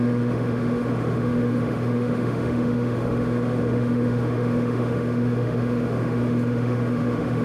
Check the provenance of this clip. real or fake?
fake